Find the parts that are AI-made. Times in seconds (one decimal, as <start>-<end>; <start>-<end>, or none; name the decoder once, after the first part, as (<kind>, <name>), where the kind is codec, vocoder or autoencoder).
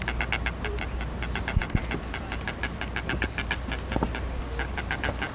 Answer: none